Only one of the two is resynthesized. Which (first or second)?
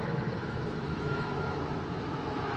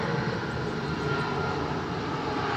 first